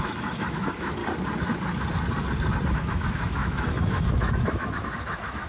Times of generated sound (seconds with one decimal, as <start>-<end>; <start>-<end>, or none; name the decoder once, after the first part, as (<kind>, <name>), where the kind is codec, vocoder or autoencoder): 0.0-1.0 (autoencoder, DAC-VAE); 2.7-5.5